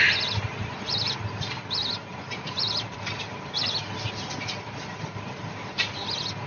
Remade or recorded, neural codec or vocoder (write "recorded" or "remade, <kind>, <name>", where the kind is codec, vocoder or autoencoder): recorded